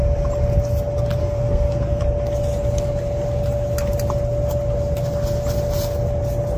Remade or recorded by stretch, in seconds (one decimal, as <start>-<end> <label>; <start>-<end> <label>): 0.0-1.2 recorded; 1.2-2.0 remade; 2.0-6.6 recorded